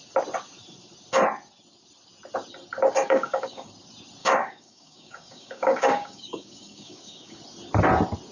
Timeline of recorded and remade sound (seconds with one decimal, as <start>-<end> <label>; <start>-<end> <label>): 0.0-3.0 recorded; 3.0-3.7 remade; 3.7-4.2 recorded; 4.2-7.4 remade; 7.4-8.3 recorded